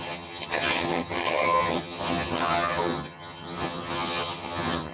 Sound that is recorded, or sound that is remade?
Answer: remade